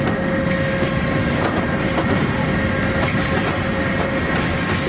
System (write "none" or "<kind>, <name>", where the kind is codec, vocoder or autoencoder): none